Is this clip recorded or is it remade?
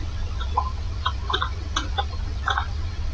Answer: remade